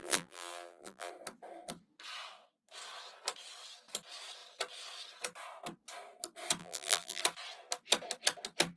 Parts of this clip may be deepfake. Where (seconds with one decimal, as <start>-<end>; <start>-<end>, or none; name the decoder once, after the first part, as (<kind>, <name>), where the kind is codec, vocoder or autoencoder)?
0.0-1.1 (vocoder, BigVGAN v2); 6.6-7.2